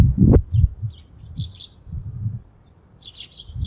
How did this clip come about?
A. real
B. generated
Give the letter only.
A